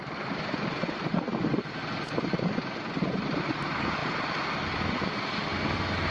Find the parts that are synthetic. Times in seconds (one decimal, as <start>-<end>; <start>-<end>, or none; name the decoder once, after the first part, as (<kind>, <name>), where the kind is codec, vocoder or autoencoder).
none